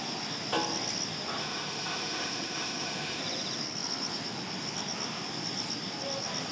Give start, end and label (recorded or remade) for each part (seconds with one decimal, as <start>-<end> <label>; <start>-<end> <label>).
0.0-1.4 recorded; 1.4-3.2 remade; 3.2-6.5 recorded